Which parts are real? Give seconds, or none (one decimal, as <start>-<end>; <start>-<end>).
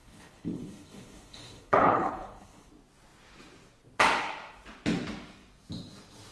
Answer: 2.7-6.3